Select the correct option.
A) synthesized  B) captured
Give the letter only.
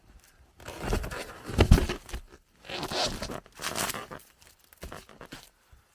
B